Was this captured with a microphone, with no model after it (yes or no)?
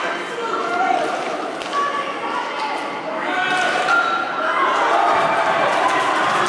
yes